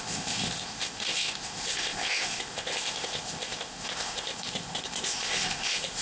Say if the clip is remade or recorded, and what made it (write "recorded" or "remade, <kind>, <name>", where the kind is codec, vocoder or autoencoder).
remade, codec, ZipCodec